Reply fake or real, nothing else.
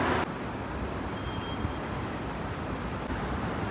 real